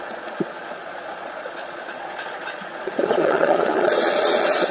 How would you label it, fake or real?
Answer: fake